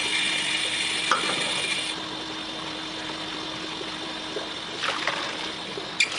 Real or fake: real